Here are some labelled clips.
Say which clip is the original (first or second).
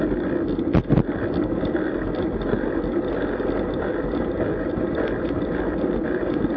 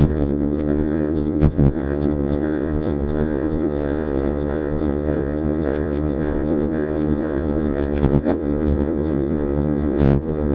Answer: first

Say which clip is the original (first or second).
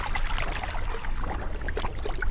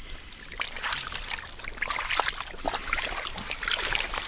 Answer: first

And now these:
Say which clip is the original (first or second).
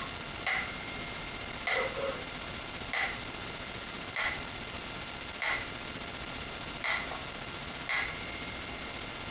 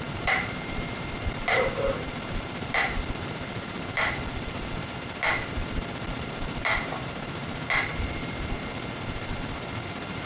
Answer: first